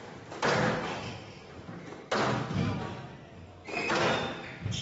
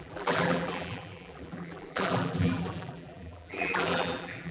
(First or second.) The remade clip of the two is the second